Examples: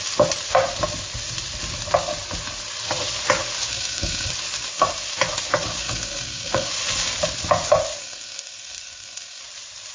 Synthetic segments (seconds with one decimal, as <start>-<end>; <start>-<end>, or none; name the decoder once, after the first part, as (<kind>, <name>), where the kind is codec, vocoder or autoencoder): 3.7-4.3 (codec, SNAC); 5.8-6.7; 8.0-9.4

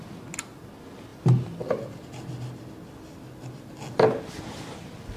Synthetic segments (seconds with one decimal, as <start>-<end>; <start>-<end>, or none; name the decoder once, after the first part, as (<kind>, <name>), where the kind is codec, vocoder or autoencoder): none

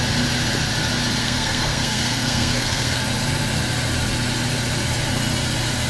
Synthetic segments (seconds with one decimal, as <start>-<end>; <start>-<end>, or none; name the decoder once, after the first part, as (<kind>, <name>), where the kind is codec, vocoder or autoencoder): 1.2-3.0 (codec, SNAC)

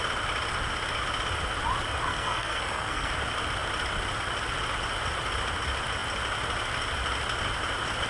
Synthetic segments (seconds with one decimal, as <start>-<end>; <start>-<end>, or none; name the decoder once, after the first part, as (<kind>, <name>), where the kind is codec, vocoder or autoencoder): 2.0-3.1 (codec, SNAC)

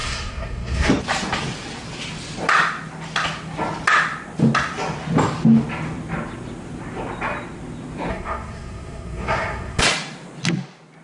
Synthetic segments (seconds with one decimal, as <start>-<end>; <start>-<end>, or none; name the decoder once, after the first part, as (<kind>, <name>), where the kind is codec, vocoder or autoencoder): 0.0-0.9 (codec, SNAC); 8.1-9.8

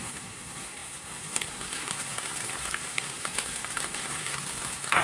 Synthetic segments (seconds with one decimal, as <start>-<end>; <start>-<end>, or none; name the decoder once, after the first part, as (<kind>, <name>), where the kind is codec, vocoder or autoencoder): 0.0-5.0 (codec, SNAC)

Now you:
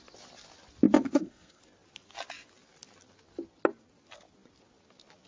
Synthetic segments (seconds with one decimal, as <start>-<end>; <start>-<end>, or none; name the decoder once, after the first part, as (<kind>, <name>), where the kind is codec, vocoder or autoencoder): 1.1-1.6 (codec, SNAC)

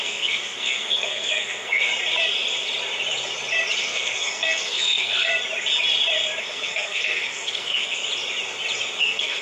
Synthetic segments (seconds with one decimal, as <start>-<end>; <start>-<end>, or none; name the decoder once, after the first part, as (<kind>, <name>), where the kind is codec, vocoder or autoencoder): 0.0-1.9 (codec, SNAC); 3.8-5.3; 6.4-8.0; 9.0-9.4